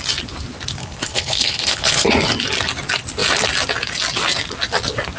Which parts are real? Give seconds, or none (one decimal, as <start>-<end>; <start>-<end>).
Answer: 0.0-0.8; 2.1-5.2